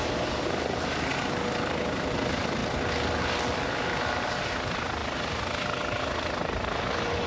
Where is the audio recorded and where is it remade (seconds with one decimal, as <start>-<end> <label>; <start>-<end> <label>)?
0.0-7.3 recorded